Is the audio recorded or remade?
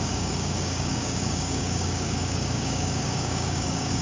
remade